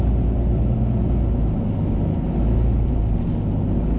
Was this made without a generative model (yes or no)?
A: yes